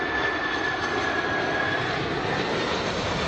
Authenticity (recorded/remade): recorded